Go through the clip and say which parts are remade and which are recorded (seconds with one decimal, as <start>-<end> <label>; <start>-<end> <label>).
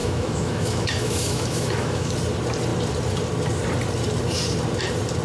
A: 0.0-2.1 remade; 2.1-5.2 recorded